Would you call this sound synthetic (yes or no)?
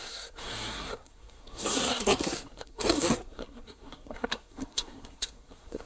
yes